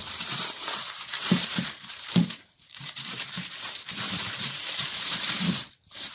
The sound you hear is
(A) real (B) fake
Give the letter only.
B